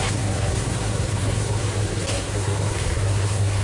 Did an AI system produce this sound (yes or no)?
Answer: yes